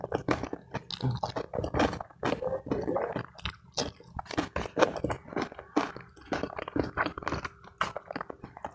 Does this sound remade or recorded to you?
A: recorded